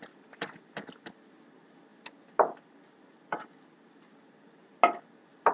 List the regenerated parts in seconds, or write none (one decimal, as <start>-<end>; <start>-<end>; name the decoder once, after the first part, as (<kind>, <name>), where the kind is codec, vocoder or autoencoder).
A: none